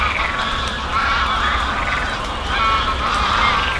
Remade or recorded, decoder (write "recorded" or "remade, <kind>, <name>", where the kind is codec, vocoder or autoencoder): recorded